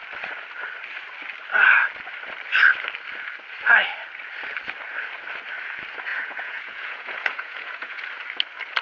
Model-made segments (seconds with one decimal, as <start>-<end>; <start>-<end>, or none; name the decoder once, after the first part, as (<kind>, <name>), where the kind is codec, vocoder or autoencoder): 6.1-8.0 (vocoder, Vocos)